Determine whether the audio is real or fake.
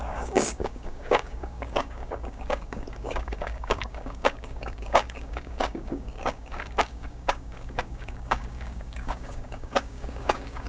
fake